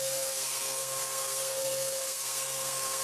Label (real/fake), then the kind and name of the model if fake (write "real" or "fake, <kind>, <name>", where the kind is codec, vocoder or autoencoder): fake, codec, SNAC